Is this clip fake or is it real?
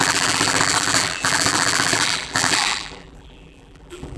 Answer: fake